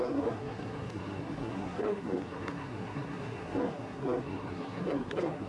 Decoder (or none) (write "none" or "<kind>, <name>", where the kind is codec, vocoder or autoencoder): codec, SNAC